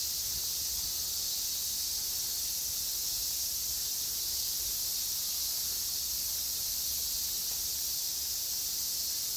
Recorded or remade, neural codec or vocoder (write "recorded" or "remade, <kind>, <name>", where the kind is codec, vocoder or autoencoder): recorded